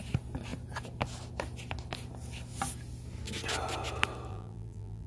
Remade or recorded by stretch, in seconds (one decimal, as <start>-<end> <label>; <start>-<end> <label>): 0.0-4.3 recorded; 4.3-5.1 remade